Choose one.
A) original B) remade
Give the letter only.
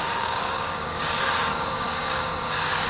B